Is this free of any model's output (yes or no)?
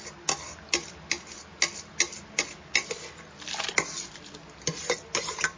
yes